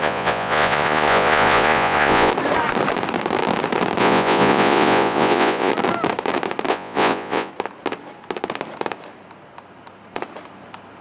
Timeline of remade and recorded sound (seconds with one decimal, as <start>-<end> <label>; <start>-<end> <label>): 0.0-2.3 remade; 2.3-4.0 recorded; 4.0-5.7 remade; 5.7-6.7 recorded; 6.7-7.5 remade; 7.5-11.0 recorded